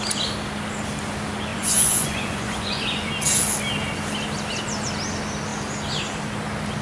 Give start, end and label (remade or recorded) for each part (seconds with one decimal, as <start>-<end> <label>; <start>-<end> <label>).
0.0-1.5 recorded; 1.5-3.1 remade; 3.1-6.8 recorded